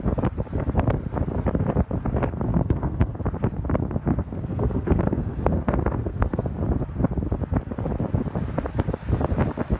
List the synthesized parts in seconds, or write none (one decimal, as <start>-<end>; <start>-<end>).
2.5-3.1; 4.1-6.4